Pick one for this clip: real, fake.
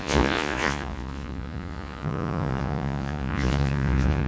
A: fake